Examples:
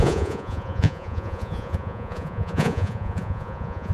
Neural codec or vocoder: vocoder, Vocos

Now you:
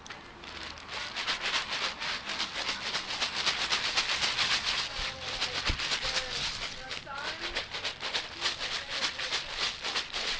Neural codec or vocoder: none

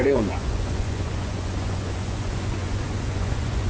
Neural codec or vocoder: vocoder, Vocos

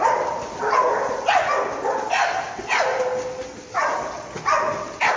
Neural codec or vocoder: none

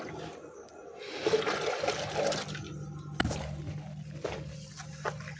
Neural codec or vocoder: none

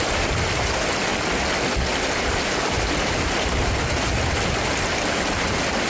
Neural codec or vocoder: none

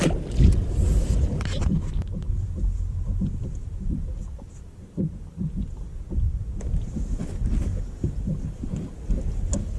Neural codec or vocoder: none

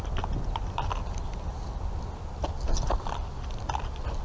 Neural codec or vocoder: none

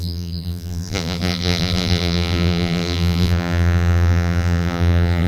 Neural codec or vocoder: vocoder, BigVGAN v2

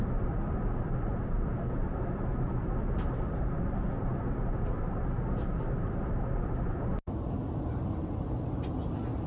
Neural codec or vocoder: none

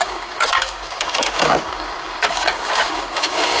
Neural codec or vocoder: codec, DAC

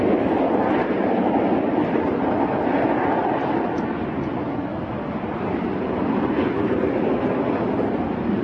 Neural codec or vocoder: vocoder, BigVGAN v2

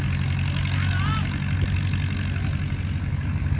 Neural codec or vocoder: none